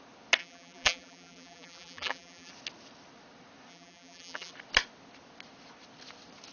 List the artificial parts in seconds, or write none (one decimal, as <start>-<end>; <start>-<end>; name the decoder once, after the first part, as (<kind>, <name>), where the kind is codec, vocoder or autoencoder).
0.4-2.5 (vocoder, BigVGAN v2); 3.7-4.5